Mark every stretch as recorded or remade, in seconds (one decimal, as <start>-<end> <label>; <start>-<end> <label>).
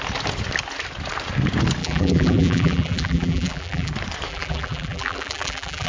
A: 0.0-1.8 recorded; 1.8-3.9 remade; 3.9-4.3 recorded; 4.3-5.9 remade